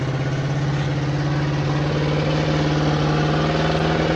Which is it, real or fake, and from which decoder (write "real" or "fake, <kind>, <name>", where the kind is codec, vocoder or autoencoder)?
real